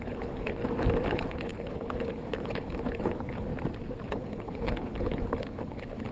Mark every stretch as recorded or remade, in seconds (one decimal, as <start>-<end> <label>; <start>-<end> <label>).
0.0-0.6 remade; 0.6-1.1 recorded; 1.1-3.5 remade; 3.5-4.1 recorded; 4.1-6.1 remade